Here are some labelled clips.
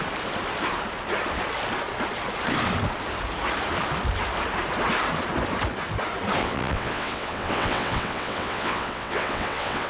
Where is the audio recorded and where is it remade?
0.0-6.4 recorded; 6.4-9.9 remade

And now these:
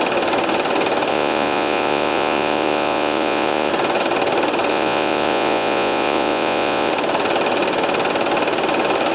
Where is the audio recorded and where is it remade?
0.0-1.1 recorded; 1.1-3.7 remade; 3.7-4.7 recorded; 4.7-6.9 remade; 6.9-9.1 recorded